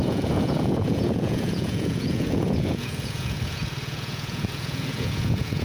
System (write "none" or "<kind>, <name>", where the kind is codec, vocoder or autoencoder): vocoder, Vocos